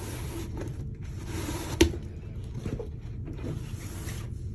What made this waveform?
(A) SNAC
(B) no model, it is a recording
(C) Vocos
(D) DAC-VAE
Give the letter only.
B